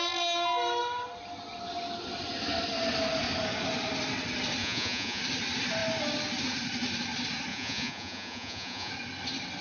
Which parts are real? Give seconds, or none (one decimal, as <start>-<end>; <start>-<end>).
0.0-4.6; 5.2-7.5; 8.9-9.6